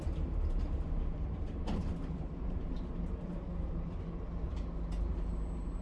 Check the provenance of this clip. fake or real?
fake